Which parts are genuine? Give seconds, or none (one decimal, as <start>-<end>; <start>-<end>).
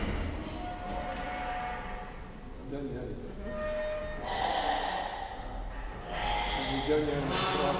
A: 0.0-7.8